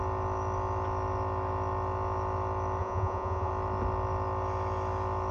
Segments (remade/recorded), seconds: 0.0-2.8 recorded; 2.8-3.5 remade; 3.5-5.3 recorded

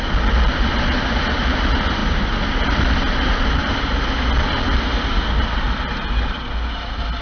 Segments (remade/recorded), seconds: 0.0-2.0 recorded; 2.0-3.8 remade; 3.8-7.2 recorded

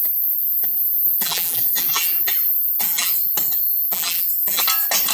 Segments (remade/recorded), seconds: 0.0-3.1 remade; 3.1-3.8 recorded; 3.8-4.6 remade; 4.6-5.1 recorded

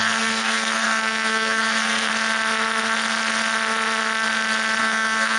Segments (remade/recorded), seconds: 0.0-2.1 remade; 2.1-4.8 recorded; 4.8-5.4 remade

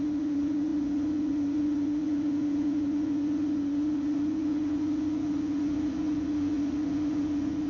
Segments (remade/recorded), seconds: 0.0-7.7 remade

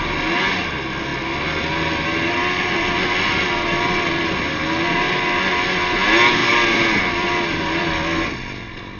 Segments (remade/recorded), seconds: 0.0-9.0 recorded

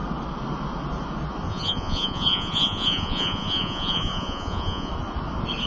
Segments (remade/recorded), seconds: 0.0-1.5 recorded; 1.5-4.9 remade; 4.9-5.7 recorded